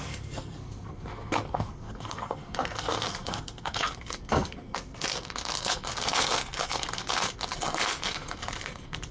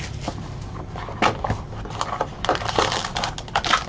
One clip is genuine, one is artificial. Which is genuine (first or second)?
second